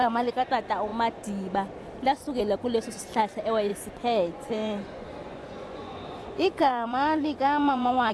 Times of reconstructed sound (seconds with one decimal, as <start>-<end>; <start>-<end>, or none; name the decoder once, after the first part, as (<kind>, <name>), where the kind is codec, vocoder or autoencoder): 0.0-0.5 (vocoder, Vocos); 3.7-8.1